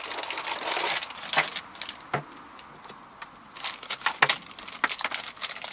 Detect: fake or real real